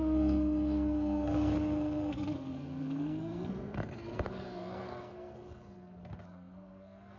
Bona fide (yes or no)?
no